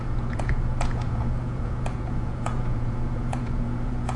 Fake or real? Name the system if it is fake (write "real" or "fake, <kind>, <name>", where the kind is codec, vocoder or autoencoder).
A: fake, vocoder, Vocos